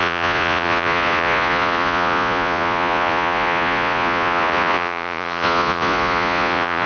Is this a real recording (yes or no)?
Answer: no